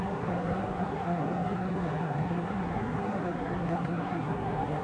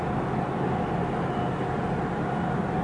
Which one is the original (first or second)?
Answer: second